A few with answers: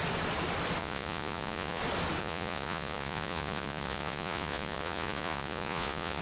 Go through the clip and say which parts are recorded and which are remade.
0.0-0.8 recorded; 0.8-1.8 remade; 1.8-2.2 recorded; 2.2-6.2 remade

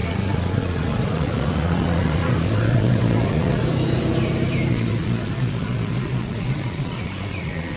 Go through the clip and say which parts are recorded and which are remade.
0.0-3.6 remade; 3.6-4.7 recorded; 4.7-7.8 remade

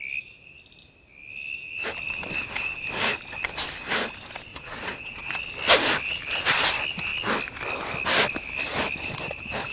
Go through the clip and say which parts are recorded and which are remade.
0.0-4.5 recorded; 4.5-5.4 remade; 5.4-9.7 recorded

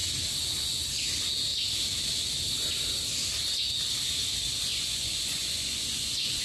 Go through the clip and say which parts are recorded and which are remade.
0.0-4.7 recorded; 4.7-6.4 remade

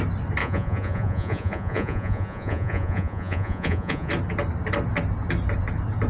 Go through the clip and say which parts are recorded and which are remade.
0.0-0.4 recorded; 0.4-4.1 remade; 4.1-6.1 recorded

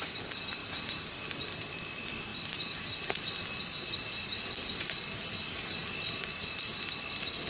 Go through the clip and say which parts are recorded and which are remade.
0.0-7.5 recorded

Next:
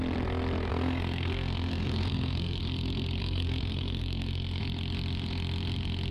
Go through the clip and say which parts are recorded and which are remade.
0.0-0.7 recorded; 0.7-2.6 remade; 2.6-3.2 recorded; 3.2-4.6 remade; 4.6-6.1 recorded